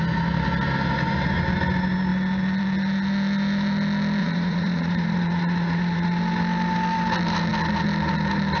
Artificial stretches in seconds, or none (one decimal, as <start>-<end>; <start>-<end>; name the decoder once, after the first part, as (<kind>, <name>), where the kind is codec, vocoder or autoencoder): 4.2-6.2 (vocoder, Vocos)